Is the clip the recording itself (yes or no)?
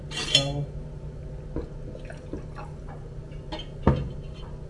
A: yes